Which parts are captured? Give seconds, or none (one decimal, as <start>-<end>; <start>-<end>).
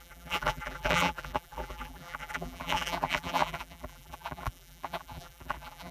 none